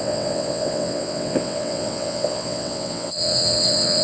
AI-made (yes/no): yes